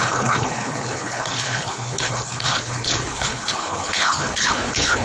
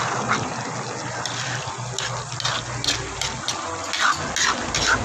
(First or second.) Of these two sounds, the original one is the second